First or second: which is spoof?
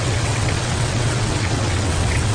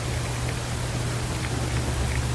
first